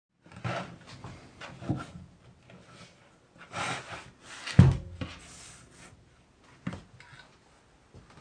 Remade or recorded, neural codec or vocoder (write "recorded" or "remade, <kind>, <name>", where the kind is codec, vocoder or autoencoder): recorded